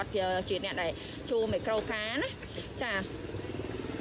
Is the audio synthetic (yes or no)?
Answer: no